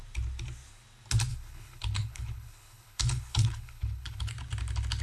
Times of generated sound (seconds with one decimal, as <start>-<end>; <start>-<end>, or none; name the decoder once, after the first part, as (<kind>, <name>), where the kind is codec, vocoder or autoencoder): 1.3-4.3 (codec, HILCodec)